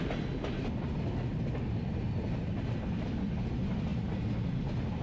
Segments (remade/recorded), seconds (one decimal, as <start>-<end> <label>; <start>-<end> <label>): 0.0-5.0 recorded